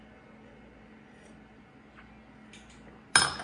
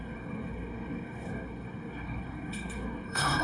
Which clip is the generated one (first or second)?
second